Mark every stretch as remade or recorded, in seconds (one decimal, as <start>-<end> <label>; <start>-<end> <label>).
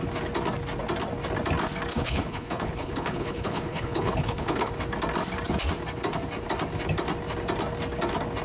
0.0-1.9 recorded; 1.9-4.7 remade; 4.7-8.4 recorded